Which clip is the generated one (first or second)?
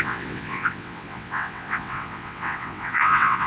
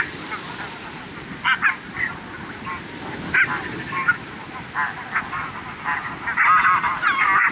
first